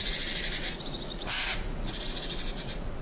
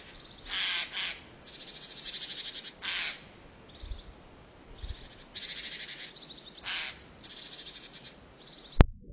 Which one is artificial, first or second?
first